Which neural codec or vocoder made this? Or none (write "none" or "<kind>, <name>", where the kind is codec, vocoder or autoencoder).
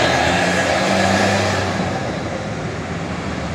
vocoder, BigVGAN v2